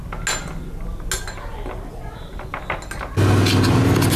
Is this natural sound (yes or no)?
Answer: yes